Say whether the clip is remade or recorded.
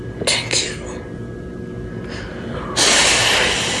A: recorded